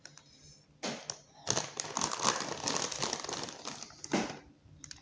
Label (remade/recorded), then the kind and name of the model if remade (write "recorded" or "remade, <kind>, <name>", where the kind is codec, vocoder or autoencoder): recorded